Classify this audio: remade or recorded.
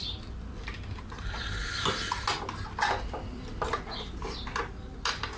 recorded